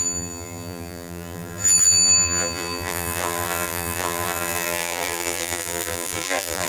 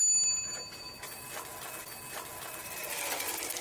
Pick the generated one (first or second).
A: first